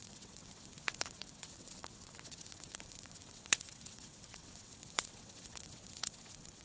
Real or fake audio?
fake